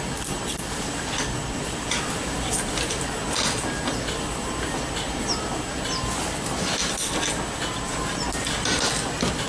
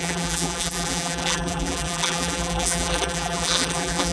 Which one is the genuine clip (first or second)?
first